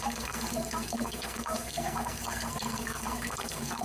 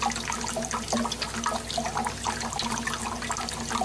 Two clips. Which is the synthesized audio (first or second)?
first